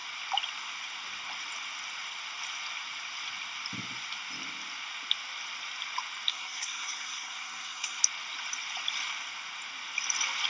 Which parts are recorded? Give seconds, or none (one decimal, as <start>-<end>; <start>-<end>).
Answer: 0.0-6.3; 8.0-10.5